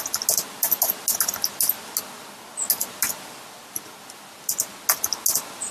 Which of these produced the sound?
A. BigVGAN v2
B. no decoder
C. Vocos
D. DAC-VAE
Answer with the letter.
B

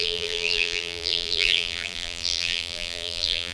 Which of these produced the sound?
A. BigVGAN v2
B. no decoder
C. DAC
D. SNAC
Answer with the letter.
A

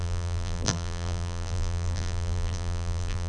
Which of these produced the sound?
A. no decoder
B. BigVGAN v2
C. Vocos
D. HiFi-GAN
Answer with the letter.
B